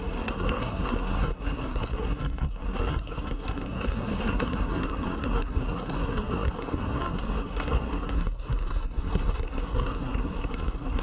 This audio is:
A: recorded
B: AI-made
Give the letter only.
B